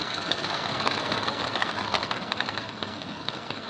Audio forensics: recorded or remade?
remade